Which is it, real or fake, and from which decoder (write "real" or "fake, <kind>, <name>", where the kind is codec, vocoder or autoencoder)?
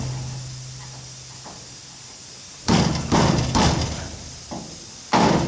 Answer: fake, vocoder, BigVGAN v2